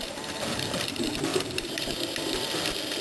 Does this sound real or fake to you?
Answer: fake